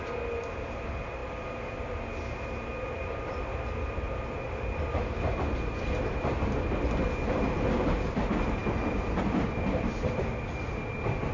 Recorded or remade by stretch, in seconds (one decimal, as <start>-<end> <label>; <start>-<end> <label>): 0.0-11.3 recorded